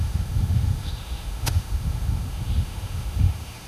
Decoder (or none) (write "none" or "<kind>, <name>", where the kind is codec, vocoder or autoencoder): autoencoder, DAC-VAE